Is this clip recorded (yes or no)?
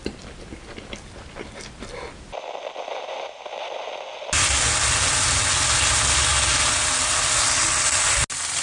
yes